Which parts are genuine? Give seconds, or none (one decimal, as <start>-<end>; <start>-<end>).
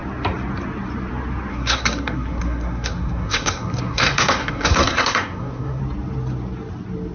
0.0-1.5; 5.8-7.1